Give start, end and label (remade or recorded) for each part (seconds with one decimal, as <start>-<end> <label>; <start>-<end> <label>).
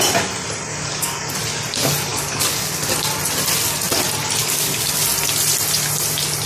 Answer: 0.0-0.7 recorded; 0.7-1.3 remade; 1.3-2.1 recorded; 2.1-2.8 remade; 2.8-4.4 recorded; 4.4-5.0 remade; 5.0-6.5 recorded